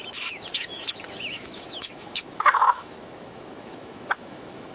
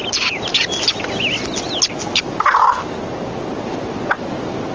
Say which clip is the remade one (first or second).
first